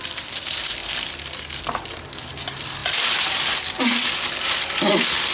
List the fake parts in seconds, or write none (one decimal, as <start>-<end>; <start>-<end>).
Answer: none